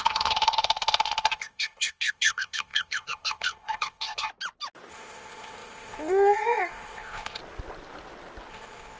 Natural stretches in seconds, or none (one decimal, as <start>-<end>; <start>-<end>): 4.3-4.9; 7.4-8.5